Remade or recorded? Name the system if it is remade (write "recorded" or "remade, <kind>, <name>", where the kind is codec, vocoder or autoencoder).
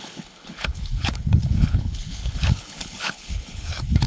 remade, codec, HILCodec